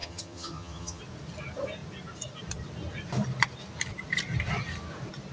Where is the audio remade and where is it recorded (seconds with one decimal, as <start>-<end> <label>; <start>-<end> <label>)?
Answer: 0.0-1.0 remade; 1.0-5.3 recorded

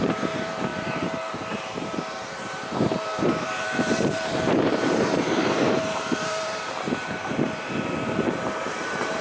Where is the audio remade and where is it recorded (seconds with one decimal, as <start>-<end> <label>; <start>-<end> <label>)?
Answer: 0.0-9.2 remade

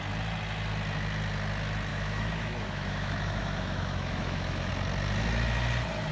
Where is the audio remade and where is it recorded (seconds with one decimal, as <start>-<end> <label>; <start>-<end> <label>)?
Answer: 0.0-1.9 recorded; 1.9-4.7 remade; 4.7-6.1 recorded

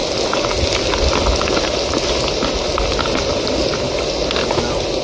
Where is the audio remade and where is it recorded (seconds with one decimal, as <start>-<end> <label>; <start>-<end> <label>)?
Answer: 0.0-5.0 recorded

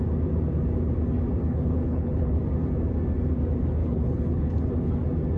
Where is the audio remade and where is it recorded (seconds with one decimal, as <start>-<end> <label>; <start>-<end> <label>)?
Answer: 0.0-1.4 recorded; 1.4-2.4 remade; 2.4-3.8 recorded; 3.8-4.9 remade; 4.9-5.4 recorded

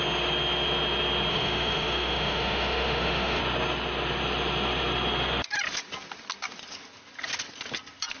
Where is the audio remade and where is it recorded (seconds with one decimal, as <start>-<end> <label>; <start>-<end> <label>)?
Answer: 0.0-1.3 recorded; 1.3-3.4 remade; 3.4-8.2 recorded